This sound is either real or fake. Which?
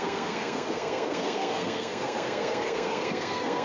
fake